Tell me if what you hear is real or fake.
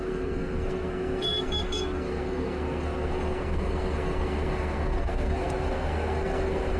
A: fake